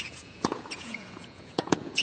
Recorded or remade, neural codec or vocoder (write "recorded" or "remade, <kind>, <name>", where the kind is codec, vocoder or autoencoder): remade, vocoder, Vocos